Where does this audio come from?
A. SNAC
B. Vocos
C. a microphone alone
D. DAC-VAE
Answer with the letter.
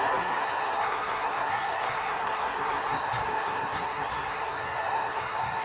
A